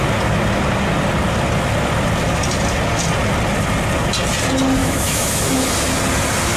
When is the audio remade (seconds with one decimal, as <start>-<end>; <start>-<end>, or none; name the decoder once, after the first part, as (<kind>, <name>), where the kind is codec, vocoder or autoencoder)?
4.8-5.7 (autoencoder, DAC-VAE)